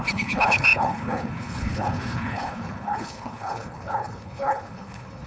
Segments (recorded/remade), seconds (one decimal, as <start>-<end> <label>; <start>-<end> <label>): 0.0-5.3 remade